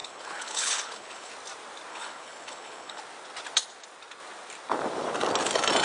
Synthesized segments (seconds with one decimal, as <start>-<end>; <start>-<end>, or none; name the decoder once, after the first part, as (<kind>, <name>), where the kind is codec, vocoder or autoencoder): 0.0-1.3 (codec, HILCodec); 1.9-3.0